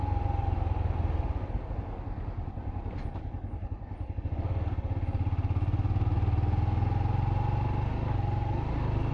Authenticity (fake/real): real